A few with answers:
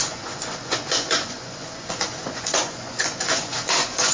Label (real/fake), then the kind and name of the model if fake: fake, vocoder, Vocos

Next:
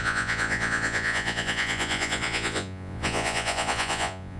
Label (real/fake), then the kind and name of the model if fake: fake, vocoder, Vocos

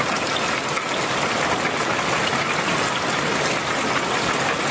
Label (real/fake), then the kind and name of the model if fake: real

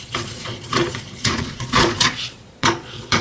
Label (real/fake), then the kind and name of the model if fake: fake, vocoder, Vocos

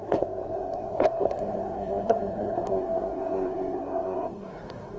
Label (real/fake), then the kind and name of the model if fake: fake, codec, SNAC